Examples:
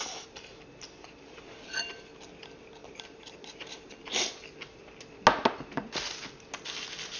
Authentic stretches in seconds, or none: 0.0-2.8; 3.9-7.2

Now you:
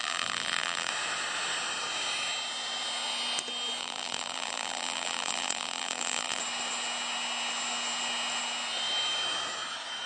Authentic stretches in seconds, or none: 0.9-3.8; 6.4-10.1